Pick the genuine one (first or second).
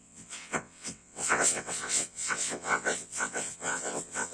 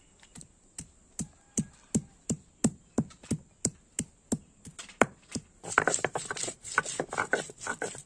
second